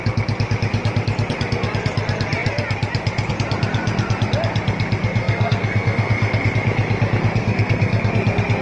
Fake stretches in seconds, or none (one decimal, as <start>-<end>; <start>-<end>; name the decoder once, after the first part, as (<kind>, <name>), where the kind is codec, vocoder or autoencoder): 5.2-6.5 (codec, SNAC); 7.4-8.1